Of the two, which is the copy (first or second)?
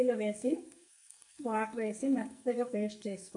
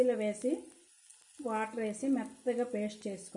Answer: first